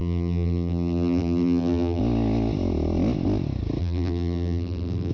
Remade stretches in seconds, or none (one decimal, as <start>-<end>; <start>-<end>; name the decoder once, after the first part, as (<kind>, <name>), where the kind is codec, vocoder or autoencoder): 0.0-2.0 (vocoder, BigVGAN v2); 3.8-5.1